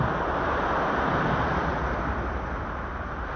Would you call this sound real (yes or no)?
yes